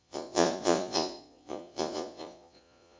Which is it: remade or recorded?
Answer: remade